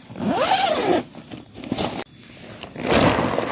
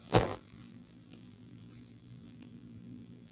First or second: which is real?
first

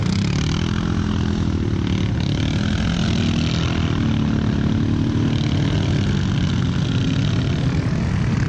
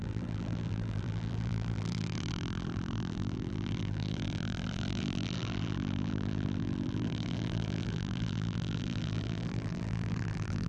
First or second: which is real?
first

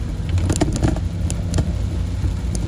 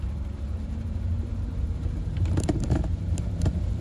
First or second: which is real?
first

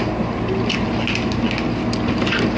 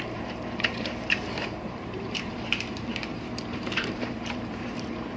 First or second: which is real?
first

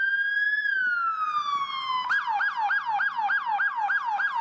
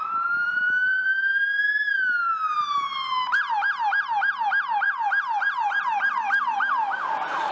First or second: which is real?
first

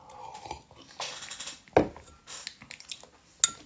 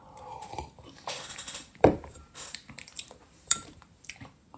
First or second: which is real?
first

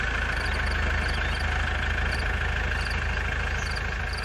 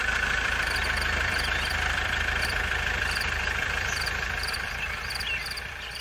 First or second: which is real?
first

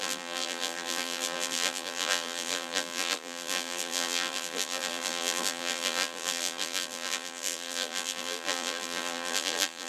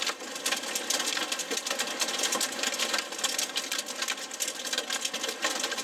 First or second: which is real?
second